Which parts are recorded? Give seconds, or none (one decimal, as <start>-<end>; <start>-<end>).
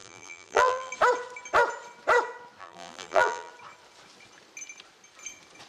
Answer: 0.9-2.6; 3.5-5.7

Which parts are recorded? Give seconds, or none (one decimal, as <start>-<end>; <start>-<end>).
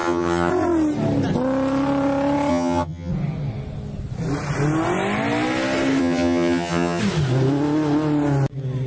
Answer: 0.5-2.5; 3.1-6.0; 7.0-8.9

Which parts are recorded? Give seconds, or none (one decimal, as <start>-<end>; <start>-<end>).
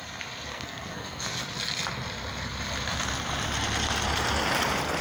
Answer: 0.0-0.5; 1.4-5.0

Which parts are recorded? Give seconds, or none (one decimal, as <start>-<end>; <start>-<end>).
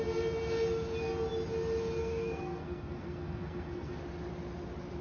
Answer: 0.0-2.0; 4.0-5.0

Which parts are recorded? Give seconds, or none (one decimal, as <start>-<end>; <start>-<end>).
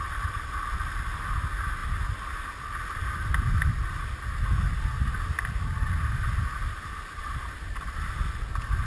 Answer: 0.0-7.2; 8.1-8.9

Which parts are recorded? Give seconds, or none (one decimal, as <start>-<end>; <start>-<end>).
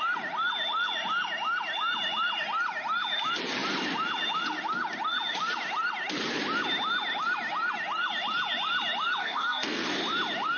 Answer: 0.0-9.2; 9.8-10.6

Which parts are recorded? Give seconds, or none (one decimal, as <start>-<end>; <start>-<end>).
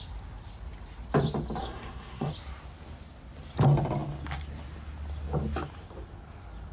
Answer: 0.0-1.6; 2.3-6.7